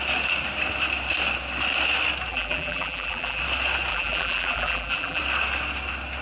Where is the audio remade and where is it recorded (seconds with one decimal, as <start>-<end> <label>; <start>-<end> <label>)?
0.0-2.3 recorded; 2.3-3.4 remade; 3.4-3.9 recorded; 3.9-5.2 remade; 5.2-6.2 recorded